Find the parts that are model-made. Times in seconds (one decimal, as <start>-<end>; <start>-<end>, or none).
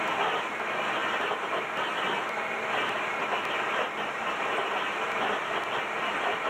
none